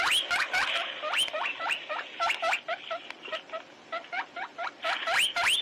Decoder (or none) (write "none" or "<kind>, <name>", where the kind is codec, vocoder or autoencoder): none